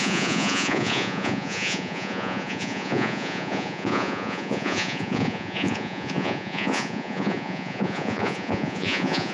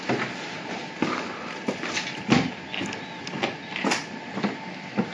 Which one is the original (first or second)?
second